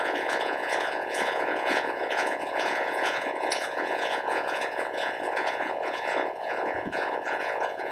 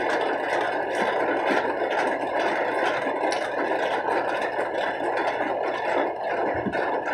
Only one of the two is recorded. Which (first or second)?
second